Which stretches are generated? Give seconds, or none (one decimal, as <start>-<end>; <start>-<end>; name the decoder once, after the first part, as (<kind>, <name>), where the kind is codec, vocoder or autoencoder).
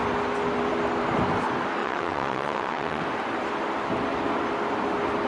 1.8-3.0 (vocoder, WaveNeXt)